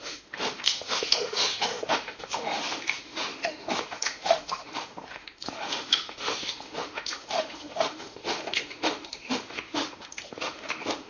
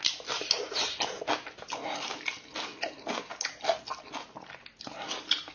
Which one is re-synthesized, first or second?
first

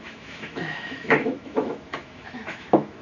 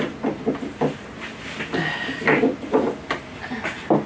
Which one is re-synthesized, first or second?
first